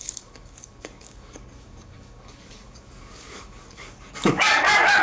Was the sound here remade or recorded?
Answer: remade